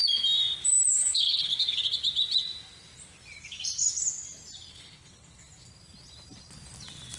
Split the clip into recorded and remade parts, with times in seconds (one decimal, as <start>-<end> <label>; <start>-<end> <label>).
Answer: 0.0-0.9 recorded; 0.9-1.5 remade; 1.5-4.7 recorded; 4.7-5.4 remade; 5.4-7.2 recorded